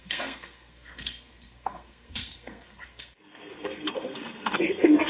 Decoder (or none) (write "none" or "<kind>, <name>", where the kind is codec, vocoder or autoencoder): codec, SNAC